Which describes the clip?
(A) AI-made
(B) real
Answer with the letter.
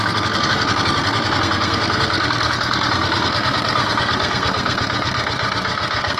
A